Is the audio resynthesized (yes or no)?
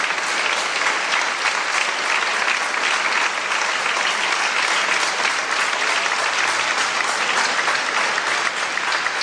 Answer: no